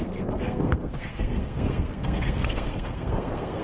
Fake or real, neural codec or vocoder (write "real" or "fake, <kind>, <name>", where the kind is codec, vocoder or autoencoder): fake, codec, SNAC